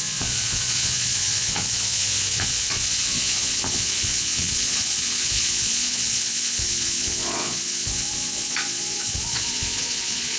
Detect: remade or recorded remade